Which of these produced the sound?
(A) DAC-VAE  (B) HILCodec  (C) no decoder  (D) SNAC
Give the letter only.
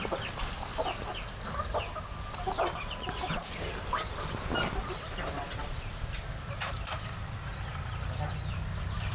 C